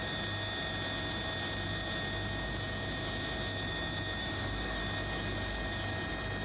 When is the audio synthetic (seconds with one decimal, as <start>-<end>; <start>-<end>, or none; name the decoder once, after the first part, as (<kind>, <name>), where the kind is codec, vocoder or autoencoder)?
4.2-4.8 (codec, DAC)

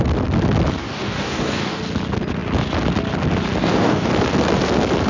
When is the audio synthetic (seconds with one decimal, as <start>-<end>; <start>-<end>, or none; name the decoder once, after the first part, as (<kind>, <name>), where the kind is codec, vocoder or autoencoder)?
0.8-1.8 (codec, DAC); 3.6-4.1

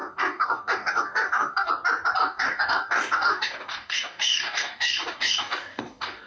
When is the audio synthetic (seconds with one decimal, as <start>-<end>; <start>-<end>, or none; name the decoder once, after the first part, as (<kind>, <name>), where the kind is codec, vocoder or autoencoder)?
0.0-1.7 (codec, DAC); 2.2-6.3

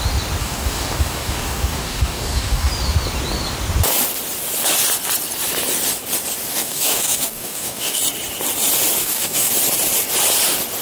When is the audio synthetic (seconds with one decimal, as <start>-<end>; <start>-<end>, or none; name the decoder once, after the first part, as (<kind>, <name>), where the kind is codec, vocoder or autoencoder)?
0.4-2.7 (codec, DAC); 6.5-8.0; 9.0-9.5